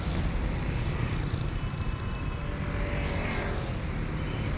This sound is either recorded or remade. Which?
recorded